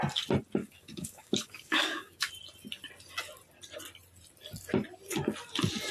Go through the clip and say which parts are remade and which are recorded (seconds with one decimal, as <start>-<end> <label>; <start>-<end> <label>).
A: 0.0-0.6 recorded; 0.6-2.3 remade; 2.3-5.9 recorded